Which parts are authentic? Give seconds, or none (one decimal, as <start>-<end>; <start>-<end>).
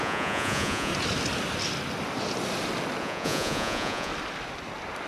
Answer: 0.9-3.0; 4.1-5.1